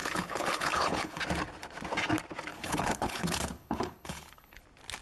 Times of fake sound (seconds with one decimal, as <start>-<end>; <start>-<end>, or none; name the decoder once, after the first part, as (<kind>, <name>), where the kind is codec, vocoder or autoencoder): 0.0-1.2 (codec, HILCodec); 2.5-4.6